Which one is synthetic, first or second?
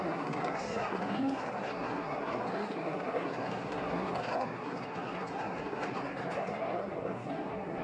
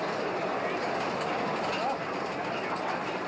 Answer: first